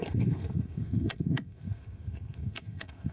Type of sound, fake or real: fake